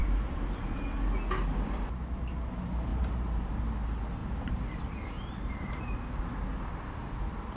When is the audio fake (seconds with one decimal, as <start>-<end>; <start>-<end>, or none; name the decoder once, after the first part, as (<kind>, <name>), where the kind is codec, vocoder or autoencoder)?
0.0-0.8 (vocoder, BigVGAN v2); 2.9-3.5; 4.2-5.8; 7.0-7.6